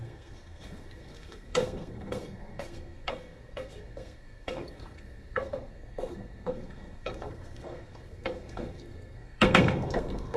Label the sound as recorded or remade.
remade